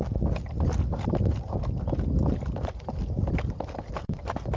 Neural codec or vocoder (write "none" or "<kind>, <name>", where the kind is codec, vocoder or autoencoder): none